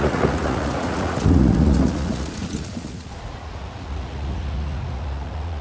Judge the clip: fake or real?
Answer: fake